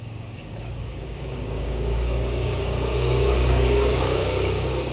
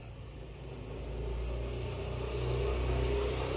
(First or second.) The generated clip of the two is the first